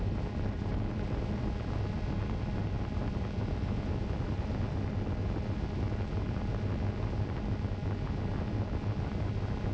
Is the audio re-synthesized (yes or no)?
no